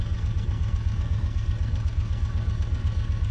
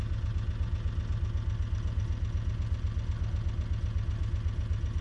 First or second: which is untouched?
second